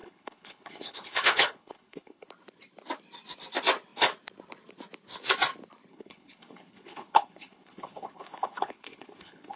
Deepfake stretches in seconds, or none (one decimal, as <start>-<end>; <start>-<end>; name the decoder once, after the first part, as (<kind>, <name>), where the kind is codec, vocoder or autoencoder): 0.0-2.3 (codec, HILCodec); 5.9-9.6